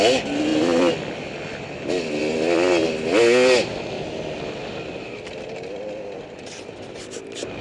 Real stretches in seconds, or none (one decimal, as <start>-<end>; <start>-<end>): 0.0-7.6